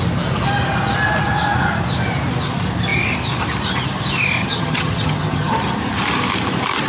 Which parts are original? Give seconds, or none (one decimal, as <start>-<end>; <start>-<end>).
0.0-4.4; 5.6-6.9